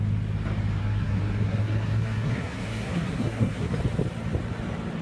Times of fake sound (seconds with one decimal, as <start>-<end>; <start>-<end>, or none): 0.8-3.8